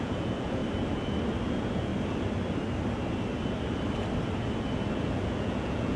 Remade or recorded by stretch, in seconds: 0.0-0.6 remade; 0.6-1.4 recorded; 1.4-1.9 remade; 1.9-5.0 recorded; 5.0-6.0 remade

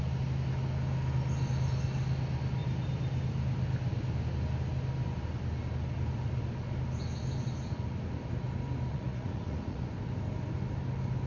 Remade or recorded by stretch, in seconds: 0.0-8.9 recorded; 8.9-9.8 remade; 9.8-11.3 recorded

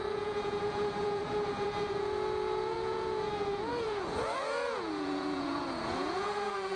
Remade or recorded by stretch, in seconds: 0.0-6.8 remade

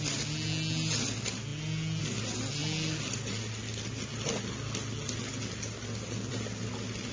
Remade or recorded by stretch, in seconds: 0.0-7.1 recorded

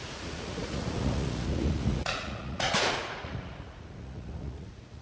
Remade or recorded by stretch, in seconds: 0.0-5.0 remade